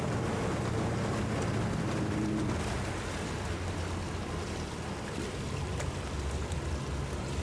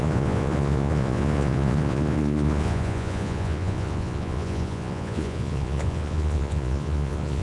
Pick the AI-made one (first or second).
second